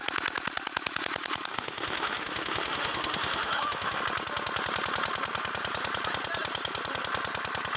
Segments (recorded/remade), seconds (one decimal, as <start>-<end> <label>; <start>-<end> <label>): 0.0-1.5 recorded; 1.5-4.0 remade; 4.0-7.8 recorded